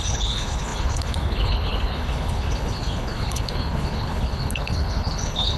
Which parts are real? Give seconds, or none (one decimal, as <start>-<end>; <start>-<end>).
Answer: none